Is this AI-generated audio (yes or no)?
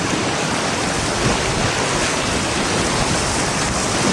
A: no